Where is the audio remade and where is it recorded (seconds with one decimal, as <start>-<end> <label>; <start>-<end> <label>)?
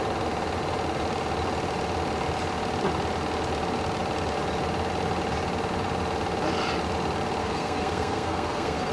0.0-7.4 recorded; 7.4-8.9 remade